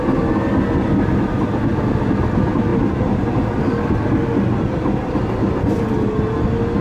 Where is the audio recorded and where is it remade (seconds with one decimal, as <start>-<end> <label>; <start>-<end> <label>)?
0.0-6.8 recorded